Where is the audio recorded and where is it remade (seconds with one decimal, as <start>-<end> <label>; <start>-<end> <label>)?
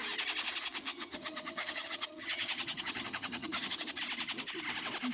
0.0-0.9 recorded; 0.9-4.0 remade; 4.0-5.1 recorded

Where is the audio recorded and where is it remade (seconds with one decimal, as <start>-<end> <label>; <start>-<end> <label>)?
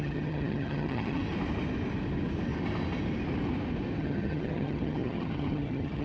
0.0-1.2 remade; 1.2-4.0 recorded; 4.0-6.0 remade